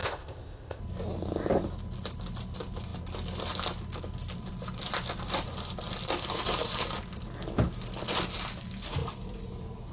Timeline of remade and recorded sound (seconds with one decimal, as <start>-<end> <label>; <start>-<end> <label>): 0.0-0.8 remade; 0.8-9.9 recorded